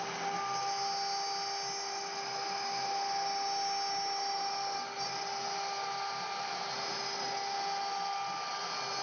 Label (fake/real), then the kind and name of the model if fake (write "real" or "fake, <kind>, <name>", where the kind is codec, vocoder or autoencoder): real